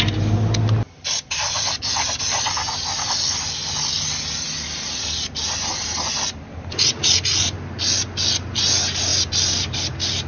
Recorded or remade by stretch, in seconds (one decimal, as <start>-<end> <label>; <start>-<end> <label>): 0.0-10.3 recorded